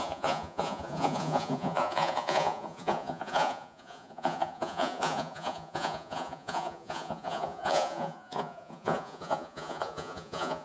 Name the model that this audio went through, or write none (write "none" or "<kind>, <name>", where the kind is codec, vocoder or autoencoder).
vocoder, Vocos